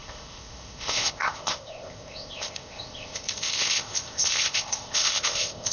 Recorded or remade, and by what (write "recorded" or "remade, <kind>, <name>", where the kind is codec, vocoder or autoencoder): remade, codec, ZipCodec